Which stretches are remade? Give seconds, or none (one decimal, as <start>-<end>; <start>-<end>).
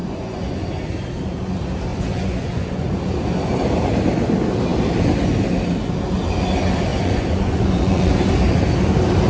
0.0-0.7; 1.9-3.0; 6.9-8.1